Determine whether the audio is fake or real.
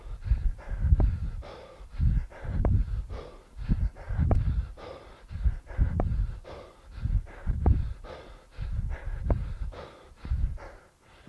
real